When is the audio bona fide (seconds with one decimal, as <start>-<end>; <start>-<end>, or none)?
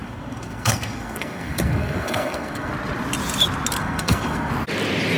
2.7-3.8; 4.5-5.2